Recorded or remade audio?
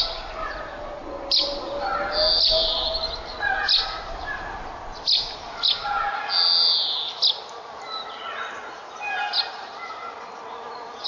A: recorded